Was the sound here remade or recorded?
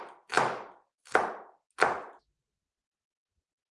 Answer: recorded